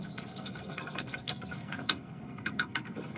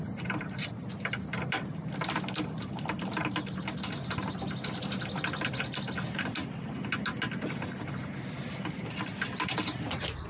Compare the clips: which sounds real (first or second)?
second